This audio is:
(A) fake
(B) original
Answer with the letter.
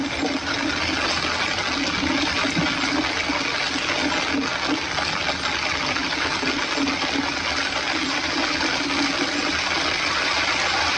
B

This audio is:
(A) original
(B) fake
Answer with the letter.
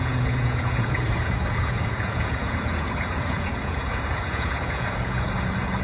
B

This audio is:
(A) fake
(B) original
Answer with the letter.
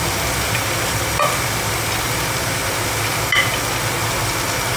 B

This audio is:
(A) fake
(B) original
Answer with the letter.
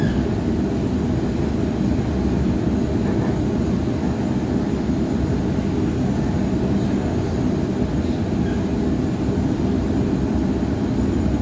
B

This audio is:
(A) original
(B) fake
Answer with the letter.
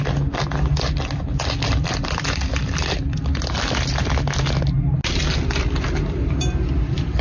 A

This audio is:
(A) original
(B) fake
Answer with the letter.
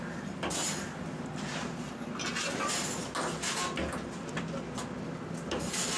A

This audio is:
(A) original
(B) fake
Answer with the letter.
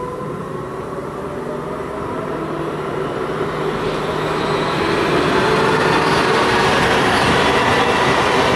A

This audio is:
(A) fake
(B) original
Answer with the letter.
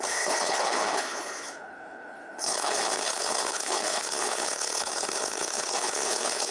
A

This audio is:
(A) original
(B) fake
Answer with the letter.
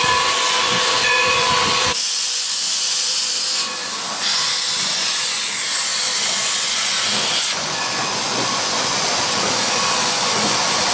B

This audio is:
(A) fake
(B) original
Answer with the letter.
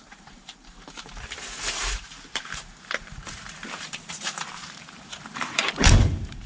A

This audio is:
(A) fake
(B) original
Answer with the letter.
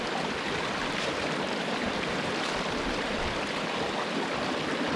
A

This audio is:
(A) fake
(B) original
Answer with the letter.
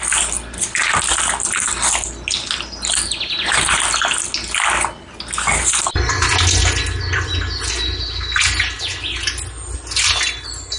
B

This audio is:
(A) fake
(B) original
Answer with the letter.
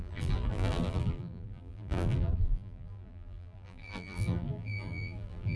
A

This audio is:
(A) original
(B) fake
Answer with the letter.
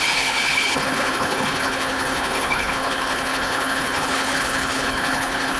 B